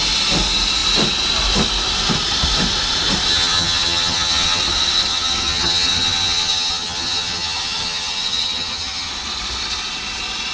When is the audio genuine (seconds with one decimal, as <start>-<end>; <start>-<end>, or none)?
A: 0.0-3.3; 4.6-5.1; 9.1-10.5